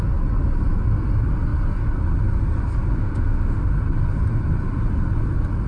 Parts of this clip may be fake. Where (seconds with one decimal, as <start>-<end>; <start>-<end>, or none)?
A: 3.0-3.7